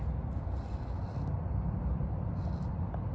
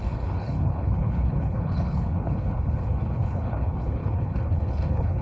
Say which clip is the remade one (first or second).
second